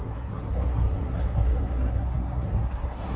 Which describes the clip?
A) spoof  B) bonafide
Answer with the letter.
A